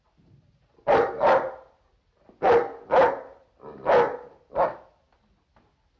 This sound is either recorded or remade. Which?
recorded